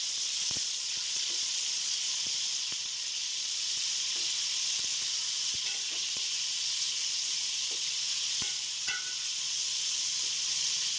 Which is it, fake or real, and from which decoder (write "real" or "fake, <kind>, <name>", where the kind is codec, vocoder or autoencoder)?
fake, vocoder, Vocos